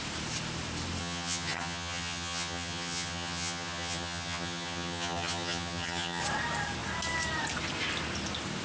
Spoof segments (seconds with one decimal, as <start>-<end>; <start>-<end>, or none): 1.0-6.2